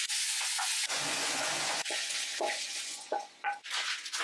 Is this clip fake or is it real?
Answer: fake